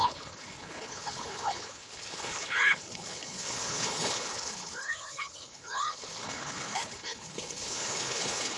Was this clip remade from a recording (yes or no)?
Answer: yes